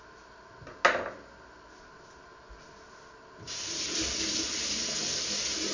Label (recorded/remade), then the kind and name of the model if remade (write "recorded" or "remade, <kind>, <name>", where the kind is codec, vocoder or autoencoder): recorded